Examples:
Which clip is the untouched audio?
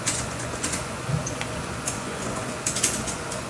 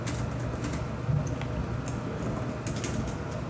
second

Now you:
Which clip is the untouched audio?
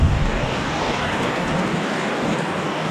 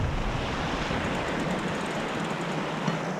second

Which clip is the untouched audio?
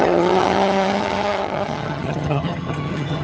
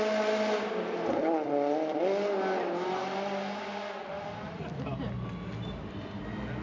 second